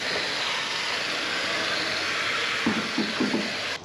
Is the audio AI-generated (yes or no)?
no